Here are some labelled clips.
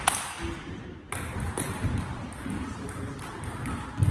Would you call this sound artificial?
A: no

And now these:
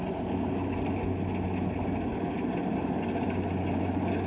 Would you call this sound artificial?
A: no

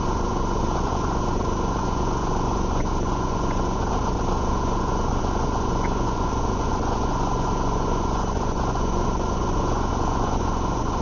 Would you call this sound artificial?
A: yes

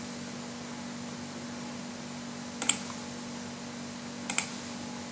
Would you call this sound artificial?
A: no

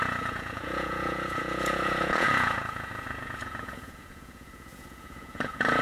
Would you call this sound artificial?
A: yes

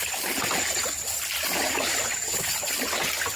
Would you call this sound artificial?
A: no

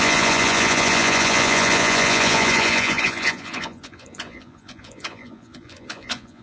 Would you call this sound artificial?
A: yes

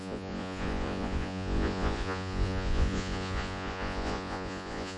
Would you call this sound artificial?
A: yes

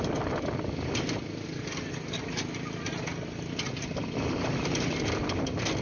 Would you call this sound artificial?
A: no